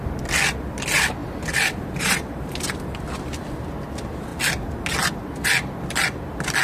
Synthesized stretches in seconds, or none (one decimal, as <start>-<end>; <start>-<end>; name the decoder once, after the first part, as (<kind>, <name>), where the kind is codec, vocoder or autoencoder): 1.2-2.5 (vocoder, BigVGAN v2)